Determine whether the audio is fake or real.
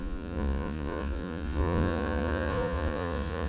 fake